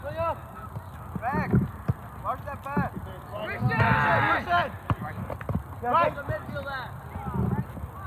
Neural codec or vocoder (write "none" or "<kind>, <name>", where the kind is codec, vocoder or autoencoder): none